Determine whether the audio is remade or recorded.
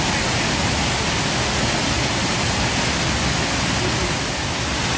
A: recorded